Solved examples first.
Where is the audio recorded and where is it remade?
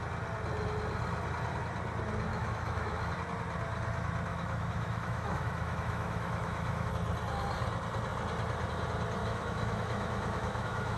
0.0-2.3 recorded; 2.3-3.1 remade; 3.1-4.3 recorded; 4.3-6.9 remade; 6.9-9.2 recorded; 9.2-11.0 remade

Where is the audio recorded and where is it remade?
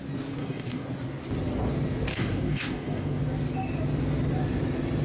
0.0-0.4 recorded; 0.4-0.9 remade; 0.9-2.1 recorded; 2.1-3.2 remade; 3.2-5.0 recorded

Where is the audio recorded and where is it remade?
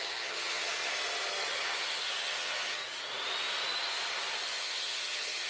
0.0-0.9 remade; 0.9-1.5 recorded; 1.5-2.8 remade; 2.8-4.6 recorded; 4.6-5.5 remade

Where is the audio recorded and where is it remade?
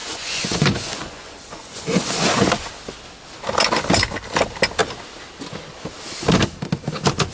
0.0-2.7 remade; 2.7-7.3 recorded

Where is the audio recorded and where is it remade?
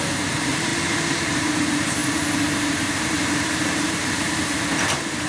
0.0-0.7 remade; 0.7-1.2 recorded; 1.2-5.3 remade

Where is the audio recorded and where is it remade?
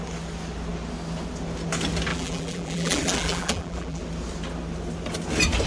0.0-2.1 recorded; 2.1-4.0 remade; 4.0-5.7 recorded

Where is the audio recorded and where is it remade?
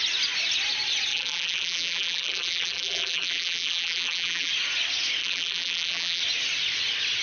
0.0-1.1 recorded; 1.1-4.5 remade; 4.5-5.2 recorded; 5.2-6.2 remade; 6.2-7.2 recorded